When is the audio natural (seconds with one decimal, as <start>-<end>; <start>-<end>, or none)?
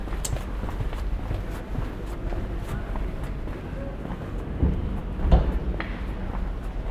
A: 0.0-6.9